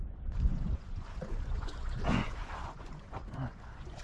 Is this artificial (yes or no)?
yes